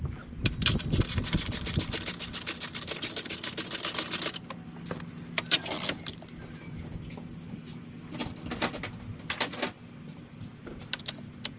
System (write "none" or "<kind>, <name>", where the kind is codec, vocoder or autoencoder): none